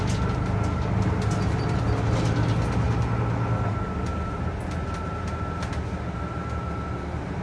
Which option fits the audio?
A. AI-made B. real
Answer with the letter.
B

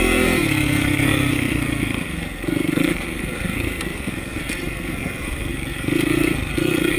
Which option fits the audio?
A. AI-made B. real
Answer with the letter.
A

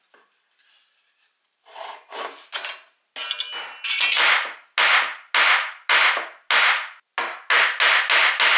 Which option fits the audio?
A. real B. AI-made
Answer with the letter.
A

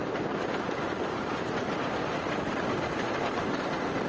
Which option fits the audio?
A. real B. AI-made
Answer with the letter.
A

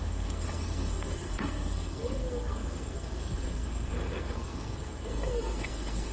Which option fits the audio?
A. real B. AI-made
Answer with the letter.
B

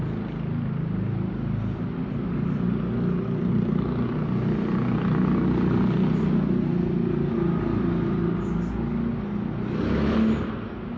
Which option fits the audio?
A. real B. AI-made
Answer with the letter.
A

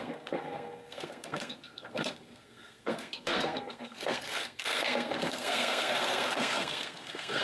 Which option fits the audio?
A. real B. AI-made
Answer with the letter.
B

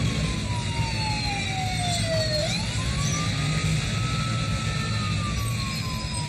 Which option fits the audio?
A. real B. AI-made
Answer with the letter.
A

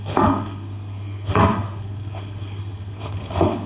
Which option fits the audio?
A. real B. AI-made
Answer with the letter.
B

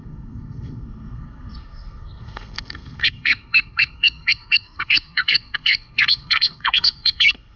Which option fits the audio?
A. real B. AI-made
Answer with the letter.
B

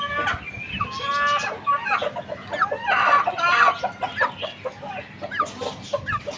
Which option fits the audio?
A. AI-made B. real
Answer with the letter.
B